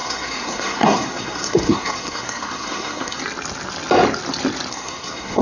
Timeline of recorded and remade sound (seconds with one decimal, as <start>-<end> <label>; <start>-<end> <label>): 0.0-3.2 remade; 3.2-4.7 recorded; 4.7-5.4 remade